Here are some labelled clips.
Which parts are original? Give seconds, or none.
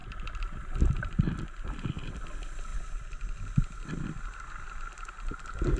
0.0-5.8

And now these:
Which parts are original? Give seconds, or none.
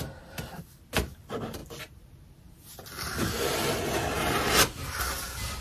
0.0-5.6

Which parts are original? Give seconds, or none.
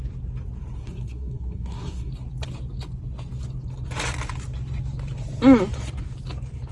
0.0-0.8; 2.1-6.7